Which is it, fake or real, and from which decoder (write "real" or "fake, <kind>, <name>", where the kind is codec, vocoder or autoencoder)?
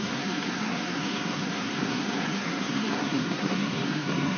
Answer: fake, codec, SNAC